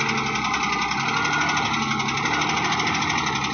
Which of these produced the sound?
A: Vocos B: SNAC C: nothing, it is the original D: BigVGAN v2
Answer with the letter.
C